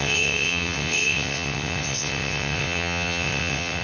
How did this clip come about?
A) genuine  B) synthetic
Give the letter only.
B